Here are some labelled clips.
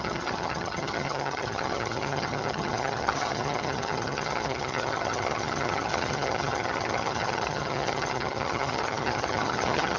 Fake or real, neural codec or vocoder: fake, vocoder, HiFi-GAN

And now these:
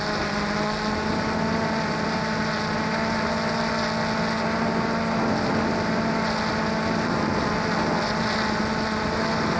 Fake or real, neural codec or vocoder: real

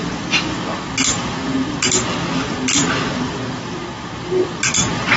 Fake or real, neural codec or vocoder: real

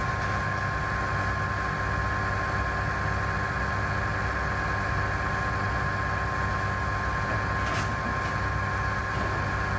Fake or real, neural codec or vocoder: real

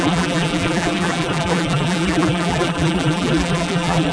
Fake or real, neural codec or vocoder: fake, vocoder, BigVGAN v2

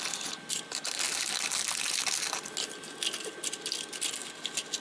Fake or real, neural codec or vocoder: real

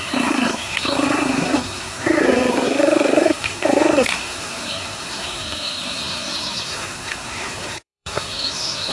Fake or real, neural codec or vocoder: fake, codec, SNAC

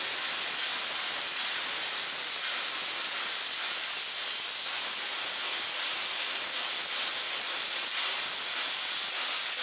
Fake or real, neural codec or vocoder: real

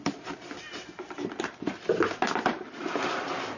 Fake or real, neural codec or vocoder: real